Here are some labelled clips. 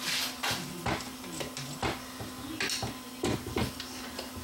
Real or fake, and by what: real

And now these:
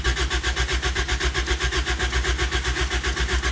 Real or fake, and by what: real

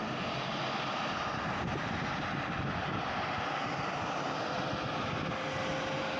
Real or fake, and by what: real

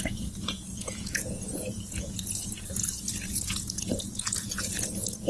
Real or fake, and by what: fake, vocoder, Vocos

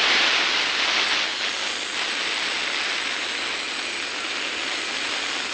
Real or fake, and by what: real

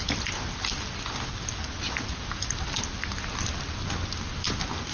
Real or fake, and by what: real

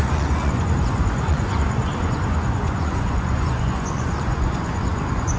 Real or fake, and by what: fake, vocoder, Vocos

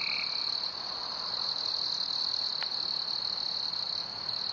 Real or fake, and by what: real